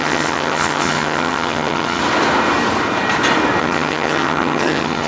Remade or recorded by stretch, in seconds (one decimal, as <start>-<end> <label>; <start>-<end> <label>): 0.0-2.0 remade; 2.0-3.6 recorded; 3.6-5.1 remade